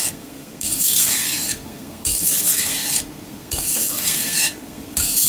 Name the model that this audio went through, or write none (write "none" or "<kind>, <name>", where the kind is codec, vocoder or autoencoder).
codec, SNAC